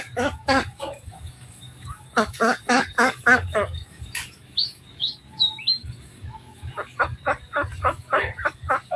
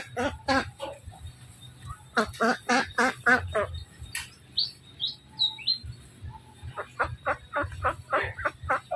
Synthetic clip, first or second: first